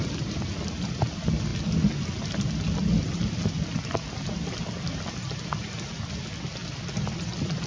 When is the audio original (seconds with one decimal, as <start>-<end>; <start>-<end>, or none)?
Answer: 0.0-7.7